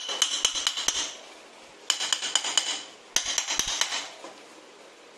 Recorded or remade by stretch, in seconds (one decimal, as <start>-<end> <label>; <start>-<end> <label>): 0.0-5.2 recorded